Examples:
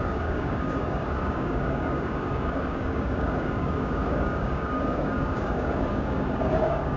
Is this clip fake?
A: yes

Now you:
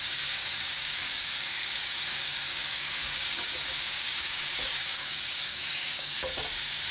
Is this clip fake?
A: yes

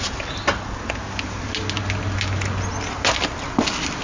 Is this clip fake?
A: no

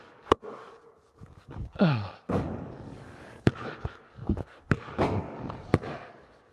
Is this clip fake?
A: yes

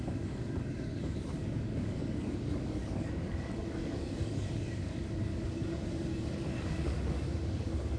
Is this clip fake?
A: yes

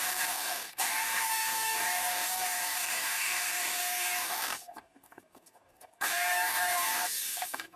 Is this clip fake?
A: yes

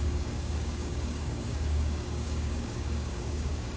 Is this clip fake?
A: yes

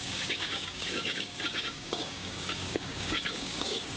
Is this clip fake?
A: yes